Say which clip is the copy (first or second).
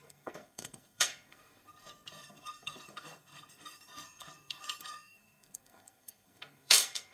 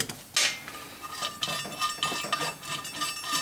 first